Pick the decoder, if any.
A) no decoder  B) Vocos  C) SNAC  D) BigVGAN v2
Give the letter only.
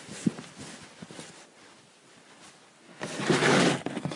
A